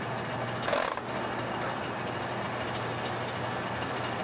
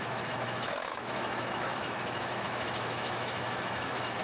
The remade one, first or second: second